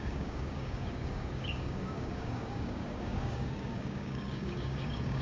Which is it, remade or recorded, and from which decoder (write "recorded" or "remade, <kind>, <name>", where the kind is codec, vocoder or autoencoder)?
remade, codec, DAC